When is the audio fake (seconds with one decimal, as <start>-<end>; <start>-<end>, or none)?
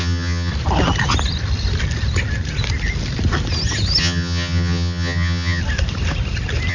0.0-0.5; 4.0-5.6